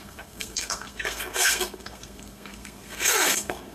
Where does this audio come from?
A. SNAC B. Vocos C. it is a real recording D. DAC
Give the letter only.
A